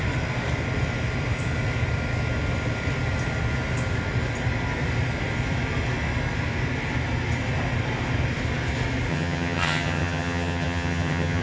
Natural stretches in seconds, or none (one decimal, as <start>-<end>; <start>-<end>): 0.0-9.1

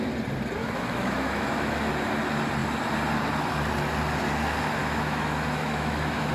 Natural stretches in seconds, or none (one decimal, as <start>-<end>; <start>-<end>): 0.0-0.6; 1.9-4.8